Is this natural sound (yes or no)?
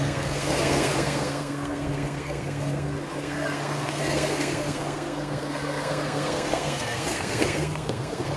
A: no